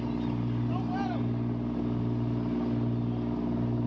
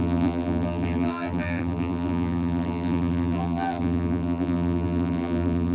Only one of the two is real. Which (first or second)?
first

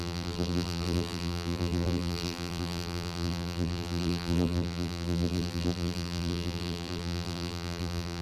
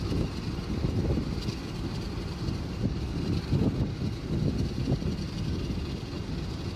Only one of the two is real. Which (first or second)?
second